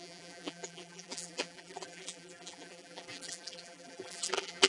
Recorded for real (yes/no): no